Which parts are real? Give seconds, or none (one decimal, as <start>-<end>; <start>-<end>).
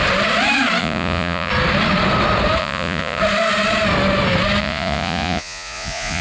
0.0-0.8; 1.5-2.6; 3.2-4.6